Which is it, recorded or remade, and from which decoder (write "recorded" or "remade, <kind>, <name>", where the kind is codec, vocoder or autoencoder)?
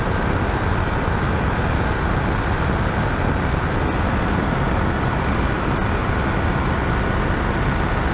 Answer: recorded